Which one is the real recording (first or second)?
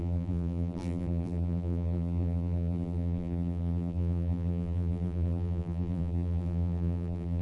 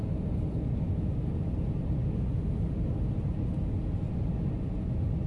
second